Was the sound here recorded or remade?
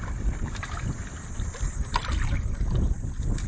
recorded